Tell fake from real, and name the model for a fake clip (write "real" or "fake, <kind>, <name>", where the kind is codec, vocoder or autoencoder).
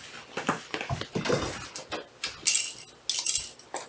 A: real